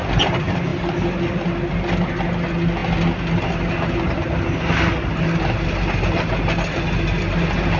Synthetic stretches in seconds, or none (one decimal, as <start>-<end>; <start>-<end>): none